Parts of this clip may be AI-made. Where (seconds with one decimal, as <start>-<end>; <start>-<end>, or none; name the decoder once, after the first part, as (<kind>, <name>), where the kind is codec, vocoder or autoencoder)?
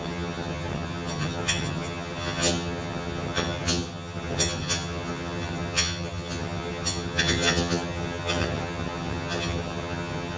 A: 0.0-10.4 (vocoder, HiFi-GAN)